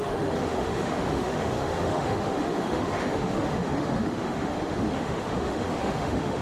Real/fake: fake